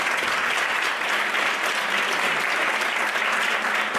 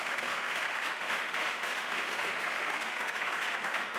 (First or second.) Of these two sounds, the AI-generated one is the second